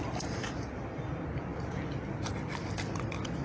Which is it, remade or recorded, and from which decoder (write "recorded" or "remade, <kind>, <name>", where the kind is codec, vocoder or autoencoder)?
recorded